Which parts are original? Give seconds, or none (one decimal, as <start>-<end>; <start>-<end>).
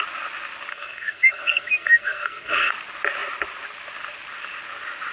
0.0-0.7; 2.7-5.1